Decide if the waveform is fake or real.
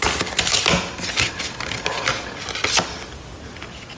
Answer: real